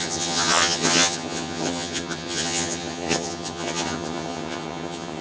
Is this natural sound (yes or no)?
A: no